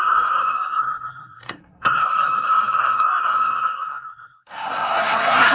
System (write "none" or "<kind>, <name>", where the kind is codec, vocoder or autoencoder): codec, SNAC